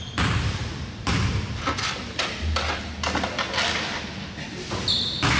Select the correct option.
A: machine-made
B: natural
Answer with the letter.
B